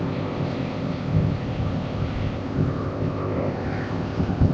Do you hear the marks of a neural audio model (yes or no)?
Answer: yes